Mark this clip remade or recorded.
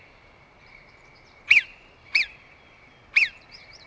remade